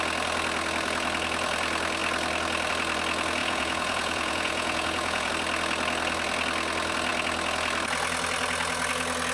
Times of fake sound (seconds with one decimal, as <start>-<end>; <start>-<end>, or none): 3.4-5.3